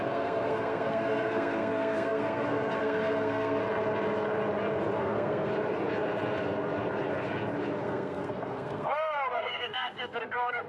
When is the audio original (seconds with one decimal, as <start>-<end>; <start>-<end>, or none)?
3.6-5.0; 5.5-7.8